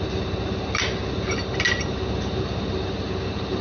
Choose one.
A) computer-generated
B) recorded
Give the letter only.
B